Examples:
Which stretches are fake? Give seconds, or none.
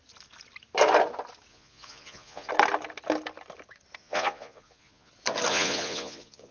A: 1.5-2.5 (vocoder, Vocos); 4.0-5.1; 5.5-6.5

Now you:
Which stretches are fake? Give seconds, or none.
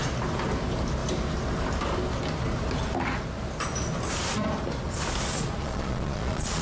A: 5.6-6.6 (vocoder, Vocos)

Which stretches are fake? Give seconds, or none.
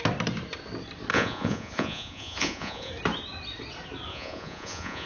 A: 1.1-2.9 (vocoder, Vocos); 4.1-5.1